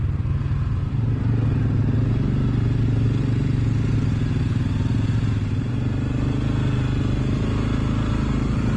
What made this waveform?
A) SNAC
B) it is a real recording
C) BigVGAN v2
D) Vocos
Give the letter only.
B